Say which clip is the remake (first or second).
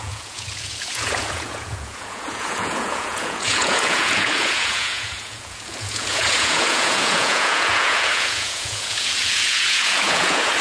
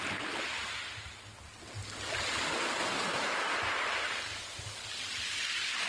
first